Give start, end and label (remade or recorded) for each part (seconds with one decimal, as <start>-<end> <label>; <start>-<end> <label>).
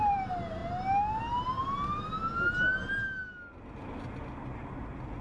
0.0-0.6 remade; 0.6-1.2 recorded; 1.2-1.6 remade; 1.6-4.7 recorded; 4.7-5.2 remade